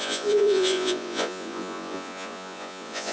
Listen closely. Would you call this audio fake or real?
fake